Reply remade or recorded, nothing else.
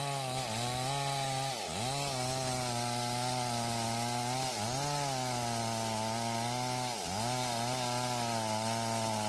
recorded